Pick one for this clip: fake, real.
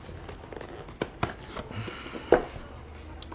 real